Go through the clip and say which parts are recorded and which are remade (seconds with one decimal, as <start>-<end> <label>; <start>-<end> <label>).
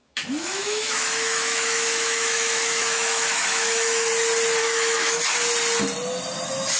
0.0-4.1 remade; 4.1-4.6 recorded; 4.6-5.2 remade; 5.2-6.8 recorded